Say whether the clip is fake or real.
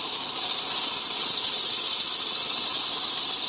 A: fake